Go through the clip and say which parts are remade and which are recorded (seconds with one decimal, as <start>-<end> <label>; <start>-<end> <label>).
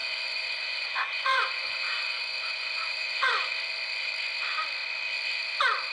0.0-3.5 remade; 3.5-5.9 recorded